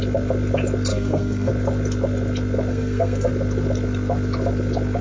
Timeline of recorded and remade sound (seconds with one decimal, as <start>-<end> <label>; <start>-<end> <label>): 0.0-0.9 recorded; 0.9-1.5 remade; 1.5-2.7 recorded; 2.7-3.3 remade; 3.3-5.0 recorded